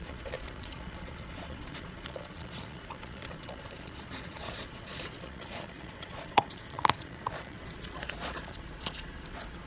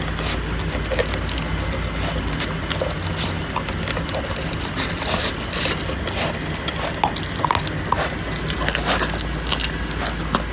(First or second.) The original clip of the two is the second